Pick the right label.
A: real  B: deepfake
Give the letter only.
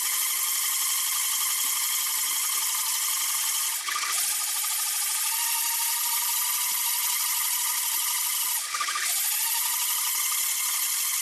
A